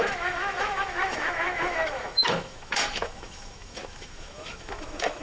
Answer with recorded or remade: remade